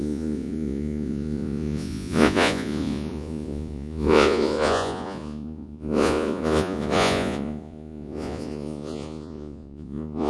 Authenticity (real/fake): fake